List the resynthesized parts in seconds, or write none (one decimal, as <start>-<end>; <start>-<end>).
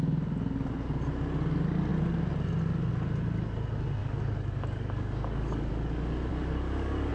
4.0-5.7; 6.3-7.1